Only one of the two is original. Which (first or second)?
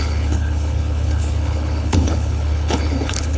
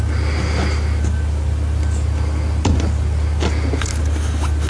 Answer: second